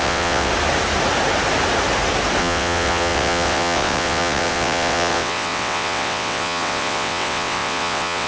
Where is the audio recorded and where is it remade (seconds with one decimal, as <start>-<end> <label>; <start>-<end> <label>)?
0.0-0.5 remade; 0.5-2.4 recorded; 2.4-8.3 remade